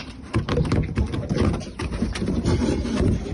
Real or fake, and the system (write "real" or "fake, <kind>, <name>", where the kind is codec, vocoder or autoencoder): real